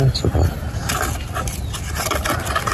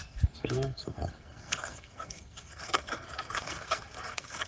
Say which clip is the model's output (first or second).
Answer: second